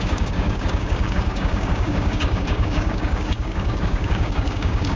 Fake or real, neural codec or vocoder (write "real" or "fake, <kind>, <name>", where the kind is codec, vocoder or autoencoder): fake, codec, DAC